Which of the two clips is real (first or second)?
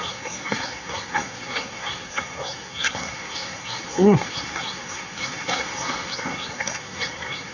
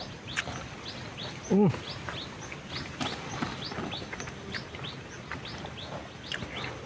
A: second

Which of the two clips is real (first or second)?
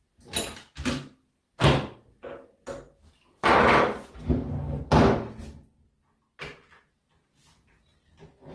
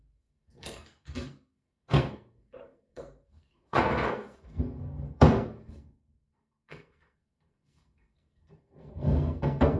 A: first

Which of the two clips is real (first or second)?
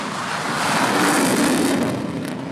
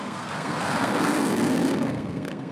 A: first